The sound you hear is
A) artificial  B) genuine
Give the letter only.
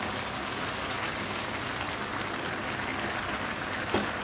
B